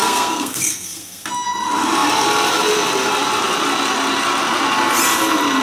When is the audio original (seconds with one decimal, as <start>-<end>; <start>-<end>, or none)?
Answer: 1.3-5.6